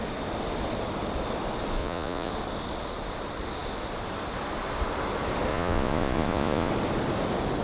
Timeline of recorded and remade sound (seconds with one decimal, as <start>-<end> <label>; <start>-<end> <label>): 0.0-1.8 recorded; 1.8-2.3 remade; 2.3-5.5 recorded; 5.5-6.7 remade; 6.7-7.6 recorded